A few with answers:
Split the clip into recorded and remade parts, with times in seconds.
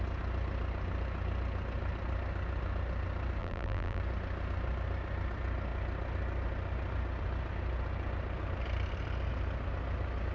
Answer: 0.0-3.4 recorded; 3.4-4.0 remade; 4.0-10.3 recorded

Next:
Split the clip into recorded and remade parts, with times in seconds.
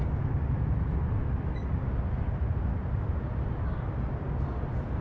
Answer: 0.0-5.0 recorded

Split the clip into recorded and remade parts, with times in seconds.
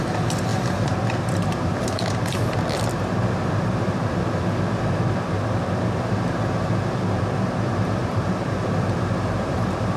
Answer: 0.0-10.0 remade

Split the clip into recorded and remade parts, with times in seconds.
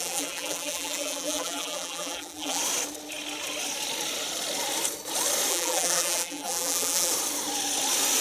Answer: 0.0-2.6 remade; 2.6-5.5 recorded; 5.5-7.1 remade; 7.1-8.2 recorded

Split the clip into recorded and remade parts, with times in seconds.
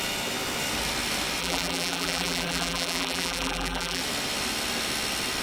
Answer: 0.0-1.4 recorded; 1.4-4.0 remade; 4.0-5.4 recorded